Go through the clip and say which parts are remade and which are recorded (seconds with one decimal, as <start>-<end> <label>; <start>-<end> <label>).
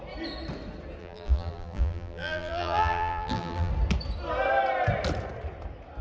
0.0-1.0 recorded; 1.0-3.7 remade; 3.7-6.0 recorded